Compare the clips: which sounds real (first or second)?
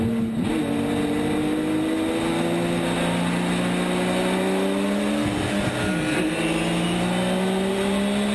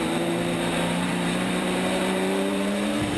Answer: first